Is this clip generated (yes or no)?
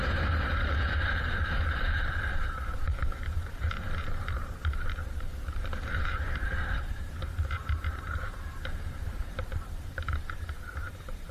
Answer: yes